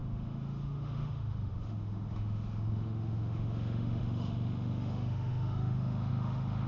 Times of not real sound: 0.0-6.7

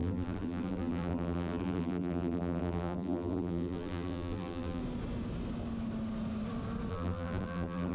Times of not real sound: 0.0-4.8; 6.9-7.9

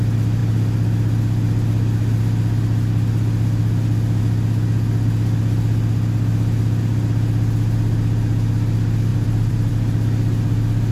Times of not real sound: 9.1-9.7

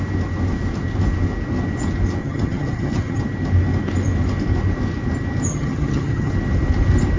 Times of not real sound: 2.2-3.2; 5.5-6.3

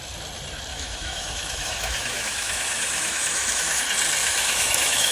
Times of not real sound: 0.7-3.8; 4.2-5.1

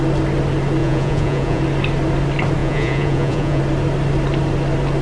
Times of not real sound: 0.8-1.6; 2.6-3.6